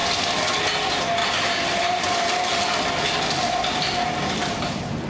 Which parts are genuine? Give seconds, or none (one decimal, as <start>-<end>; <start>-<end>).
0.0-5.1